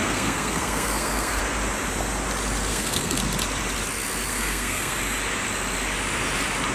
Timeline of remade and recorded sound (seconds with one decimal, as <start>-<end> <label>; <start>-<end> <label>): 0.0-1.4 remade; 1.4-2.7 recorded; 2.7-3.2 remade; 3.2-4.3 recorded; 4.3-5.0 remade; 5.0-6.7 recorded